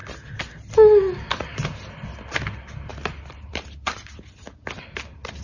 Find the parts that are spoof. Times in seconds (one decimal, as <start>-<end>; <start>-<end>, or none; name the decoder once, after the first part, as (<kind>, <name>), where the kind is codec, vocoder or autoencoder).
2.9-4.2 (vocoder, BigVGAN v2)